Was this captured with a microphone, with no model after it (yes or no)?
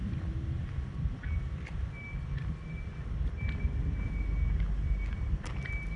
yes